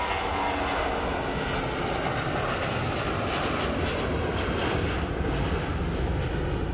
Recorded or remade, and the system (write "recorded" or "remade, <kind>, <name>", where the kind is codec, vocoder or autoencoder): recorded